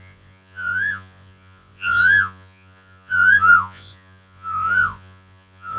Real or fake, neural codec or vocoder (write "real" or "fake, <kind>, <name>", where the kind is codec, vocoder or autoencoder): fake, vocoder, Vocos